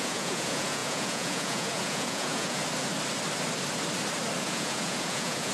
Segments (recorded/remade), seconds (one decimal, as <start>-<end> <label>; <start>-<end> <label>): 0.0-2.6 remade; 2.6-4.4 recorded; 4.4-5.5 remade